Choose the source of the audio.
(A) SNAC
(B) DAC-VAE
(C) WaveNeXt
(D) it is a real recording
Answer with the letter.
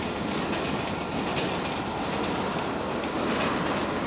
D